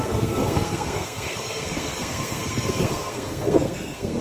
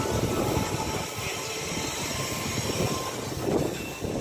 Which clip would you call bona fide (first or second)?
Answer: second